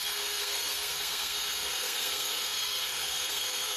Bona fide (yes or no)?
no